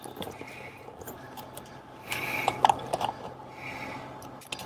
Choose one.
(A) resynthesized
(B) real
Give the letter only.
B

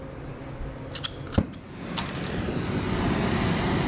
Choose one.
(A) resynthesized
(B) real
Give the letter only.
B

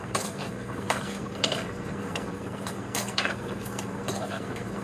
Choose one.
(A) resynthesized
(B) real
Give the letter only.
A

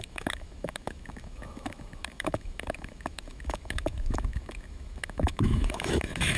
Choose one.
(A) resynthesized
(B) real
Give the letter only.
A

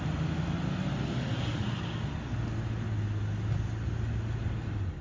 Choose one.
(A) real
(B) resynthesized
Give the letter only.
A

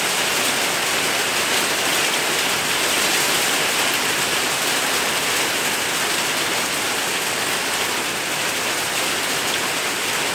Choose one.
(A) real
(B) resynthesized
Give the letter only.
A